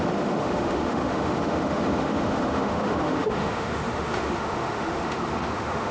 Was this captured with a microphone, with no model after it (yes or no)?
no